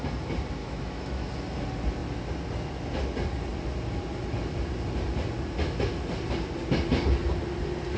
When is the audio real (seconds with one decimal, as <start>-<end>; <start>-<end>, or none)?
0.0-0.6; 1.3-8.0